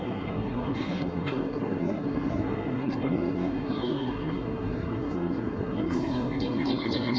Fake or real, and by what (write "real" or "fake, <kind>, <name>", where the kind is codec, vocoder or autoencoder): fake, codec, SNAC